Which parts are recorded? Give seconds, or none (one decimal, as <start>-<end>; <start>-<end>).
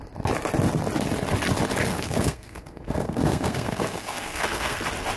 0.0-1.9; 4.8-5.2